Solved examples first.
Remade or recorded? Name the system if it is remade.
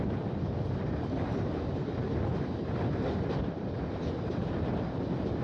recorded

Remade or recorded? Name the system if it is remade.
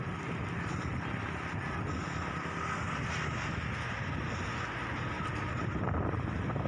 recorded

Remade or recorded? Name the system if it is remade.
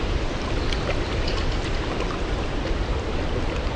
recorded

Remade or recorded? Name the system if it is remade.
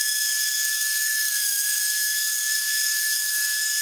remade, codec, SNAC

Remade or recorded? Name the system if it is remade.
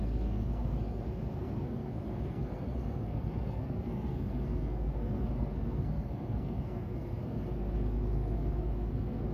remade, codec, SNAC